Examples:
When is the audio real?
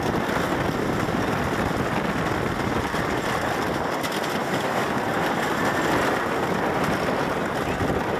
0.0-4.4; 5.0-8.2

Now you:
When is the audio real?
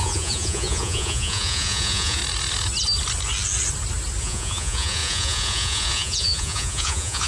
2.2-4.2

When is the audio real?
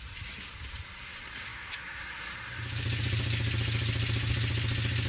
0.0-1.5; 2.0-5.1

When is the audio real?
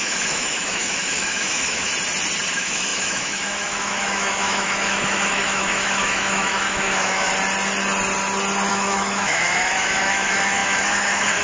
1.9-2.5; 7.3-8.7